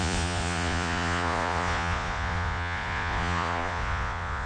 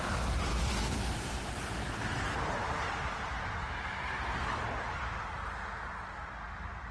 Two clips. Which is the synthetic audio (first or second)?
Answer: first